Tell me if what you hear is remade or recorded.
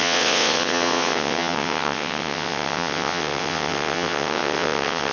remade